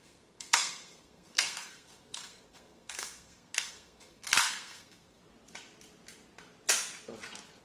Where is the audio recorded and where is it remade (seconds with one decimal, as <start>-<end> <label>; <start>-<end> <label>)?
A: 0.0-5.2 remade; 5.2-7.6 recorded